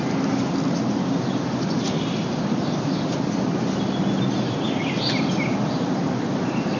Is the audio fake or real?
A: fake